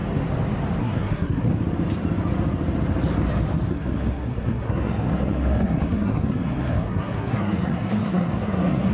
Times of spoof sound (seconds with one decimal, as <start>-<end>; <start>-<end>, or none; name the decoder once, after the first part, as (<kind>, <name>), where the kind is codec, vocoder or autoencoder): 0.8-1.5 (codec, SNAC); 3.7-8.9